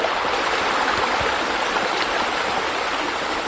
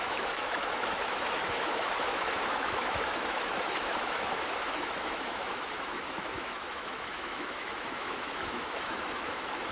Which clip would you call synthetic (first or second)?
second